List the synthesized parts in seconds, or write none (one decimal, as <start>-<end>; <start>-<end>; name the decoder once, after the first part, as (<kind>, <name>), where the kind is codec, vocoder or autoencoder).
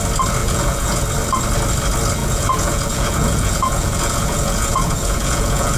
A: 0.4-1.0 (vocoder, Vocos); 2.2-5.8